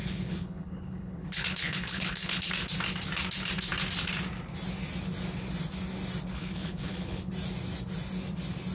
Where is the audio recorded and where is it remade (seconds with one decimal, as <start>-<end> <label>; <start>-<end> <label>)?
0.0-2.5 remade; 2.5-6.3 recorded; 6.3-7.3 remade; 7.3-8.7 recorded